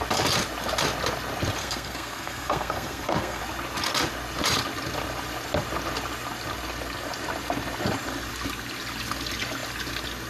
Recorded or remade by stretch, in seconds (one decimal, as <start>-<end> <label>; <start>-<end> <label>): 0.0-1.6 recorded; 1.6-3.4 remade; 3.4-10.3 recorded